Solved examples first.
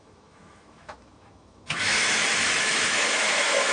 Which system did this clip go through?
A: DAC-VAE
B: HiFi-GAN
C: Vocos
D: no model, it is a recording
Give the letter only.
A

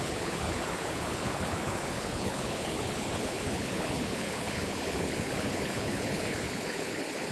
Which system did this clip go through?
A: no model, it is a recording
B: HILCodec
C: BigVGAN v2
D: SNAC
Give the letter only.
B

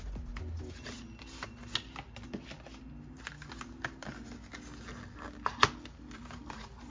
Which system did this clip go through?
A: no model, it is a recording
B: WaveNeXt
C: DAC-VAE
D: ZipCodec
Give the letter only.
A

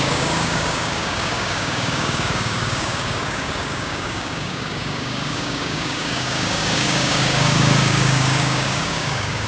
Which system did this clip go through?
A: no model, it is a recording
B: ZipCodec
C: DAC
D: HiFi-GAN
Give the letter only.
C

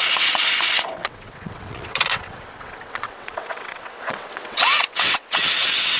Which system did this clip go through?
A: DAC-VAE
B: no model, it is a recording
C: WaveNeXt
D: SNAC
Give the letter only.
C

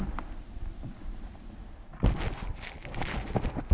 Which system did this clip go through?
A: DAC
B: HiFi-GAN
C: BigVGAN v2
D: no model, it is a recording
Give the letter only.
D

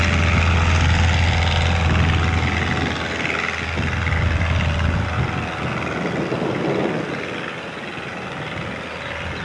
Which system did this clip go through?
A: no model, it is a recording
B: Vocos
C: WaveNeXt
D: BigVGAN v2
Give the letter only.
A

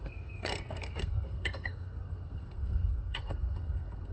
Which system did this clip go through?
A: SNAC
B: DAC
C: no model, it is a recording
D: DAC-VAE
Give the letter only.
A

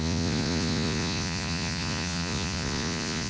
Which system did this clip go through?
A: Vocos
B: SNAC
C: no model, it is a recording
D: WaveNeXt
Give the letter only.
A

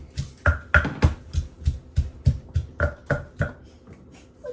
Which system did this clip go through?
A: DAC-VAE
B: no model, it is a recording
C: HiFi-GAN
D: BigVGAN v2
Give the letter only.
B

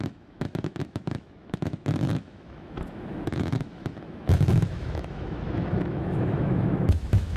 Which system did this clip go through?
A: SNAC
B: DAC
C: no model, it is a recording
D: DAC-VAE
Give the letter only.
D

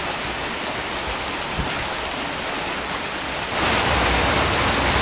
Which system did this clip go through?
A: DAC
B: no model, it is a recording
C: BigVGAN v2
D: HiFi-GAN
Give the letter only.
B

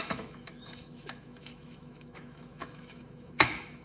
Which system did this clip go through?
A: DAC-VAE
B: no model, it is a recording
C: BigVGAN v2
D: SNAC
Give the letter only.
A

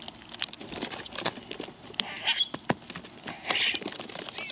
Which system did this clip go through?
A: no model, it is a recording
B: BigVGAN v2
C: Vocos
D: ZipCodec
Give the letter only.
A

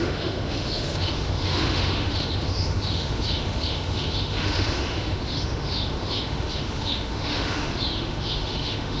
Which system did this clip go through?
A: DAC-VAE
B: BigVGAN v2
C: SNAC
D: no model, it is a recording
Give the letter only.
A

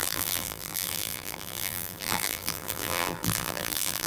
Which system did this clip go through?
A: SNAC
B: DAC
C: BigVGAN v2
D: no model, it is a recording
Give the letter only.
C